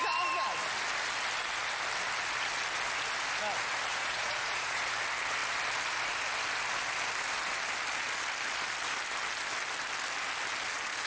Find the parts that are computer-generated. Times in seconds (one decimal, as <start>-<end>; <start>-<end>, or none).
3.9-4.8